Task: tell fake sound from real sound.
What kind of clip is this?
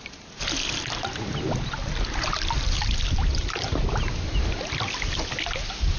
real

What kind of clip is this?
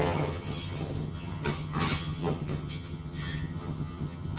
fake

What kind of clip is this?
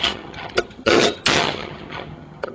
fake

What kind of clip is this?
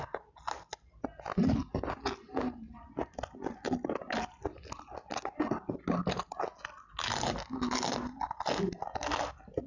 real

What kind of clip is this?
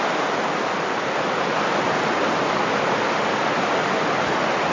real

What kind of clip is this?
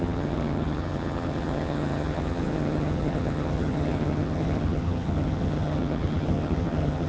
fake